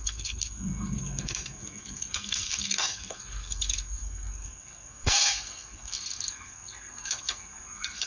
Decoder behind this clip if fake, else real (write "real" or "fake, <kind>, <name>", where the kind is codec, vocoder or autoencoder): fake, codec, SNAC